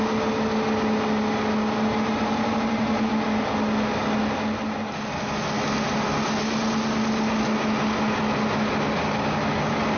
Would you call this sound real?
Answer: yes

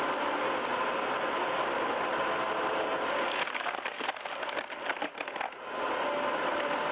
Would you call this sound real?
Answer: yes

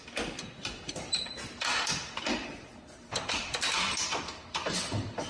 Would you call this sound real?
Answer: no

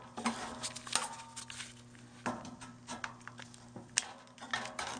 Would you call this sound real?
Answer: yes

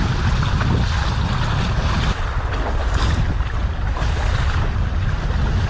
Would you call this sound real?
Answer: yes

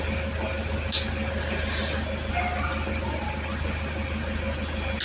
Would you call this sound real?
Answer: yes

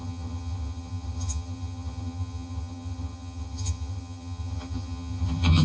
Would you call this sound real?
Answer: no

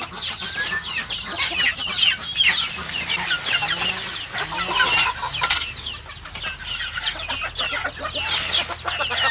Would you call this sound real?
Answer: yes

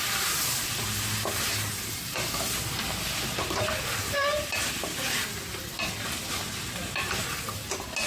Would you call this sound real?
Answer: yes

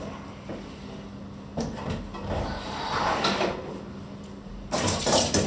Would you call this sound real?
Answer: yes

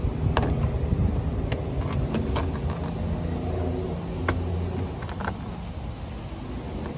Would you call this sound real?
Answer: yes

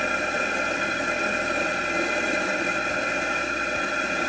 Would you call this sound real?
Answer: yes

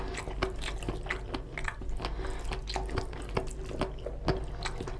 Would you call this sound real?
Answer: yes